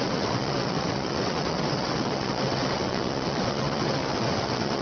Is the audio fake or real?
fake